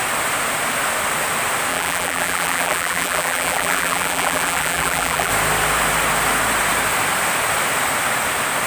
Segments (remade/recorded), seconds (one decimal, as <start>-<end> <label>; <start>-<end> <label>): 0.0-1.7 recorded; 1.7-5.3 remade; 5.3-8.7 recorded